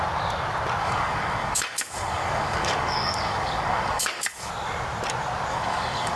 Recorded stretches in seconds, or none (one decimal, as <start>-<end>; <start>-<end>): 0.0-0.8; 4.5-5.5